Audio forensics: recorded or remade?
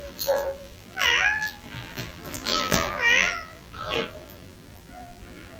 remade